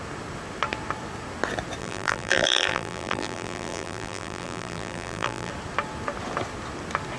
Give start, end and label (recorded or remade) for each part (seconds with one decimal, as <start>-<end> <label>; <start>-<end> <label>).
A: 0.0-1.8 recorded; 1.8-5.5 remade; 5.5-7.2 recorded